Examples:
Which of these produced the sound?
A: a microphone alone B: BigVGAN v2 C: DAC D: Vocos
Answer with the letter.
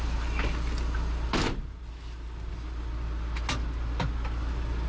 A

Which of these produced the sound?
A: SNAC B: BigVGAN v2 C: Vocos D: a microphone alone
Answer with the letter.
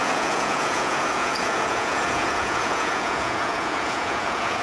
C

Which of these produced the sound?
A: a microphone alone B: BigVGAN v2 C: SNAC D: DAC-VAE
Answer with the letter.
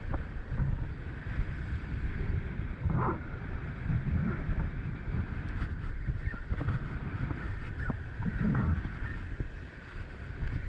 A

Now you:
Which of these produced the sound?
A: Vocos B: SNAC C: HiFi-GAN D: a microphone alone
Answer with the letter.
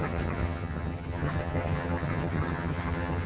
C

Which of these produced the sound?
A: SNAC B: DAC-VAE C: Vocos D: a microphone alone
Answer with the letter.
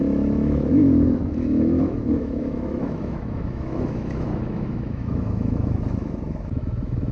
B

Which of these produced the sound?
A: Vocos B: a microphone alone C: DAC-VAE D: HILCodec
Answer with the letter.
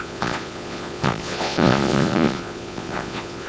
A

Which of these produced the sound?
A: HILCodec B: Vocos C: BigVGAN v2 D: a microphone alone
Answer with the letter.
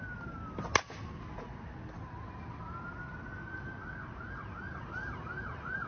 D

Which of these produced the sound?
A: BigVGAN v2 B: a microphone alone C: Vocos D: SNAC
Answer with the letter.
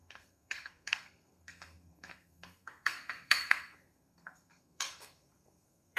D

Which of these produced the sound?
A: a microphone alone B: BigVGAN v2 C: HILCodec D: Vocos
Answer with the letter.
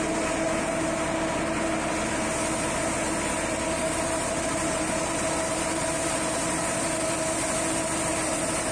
A